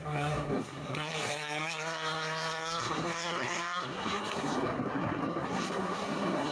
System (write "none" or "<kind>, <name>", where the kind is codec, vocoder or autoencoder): codec, SNAC